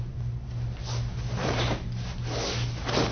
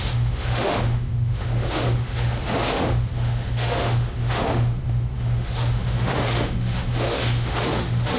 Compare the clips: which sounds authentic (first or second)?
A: first